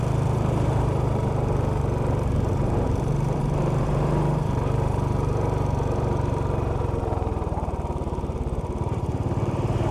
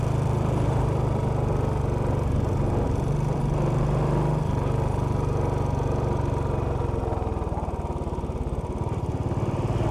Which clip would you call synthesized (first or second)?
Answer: first